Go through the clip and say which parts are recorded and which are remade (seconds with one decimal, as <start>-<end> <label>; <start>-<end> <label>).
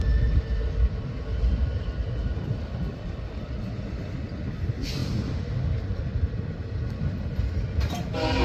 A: 0.0-8.4 recorded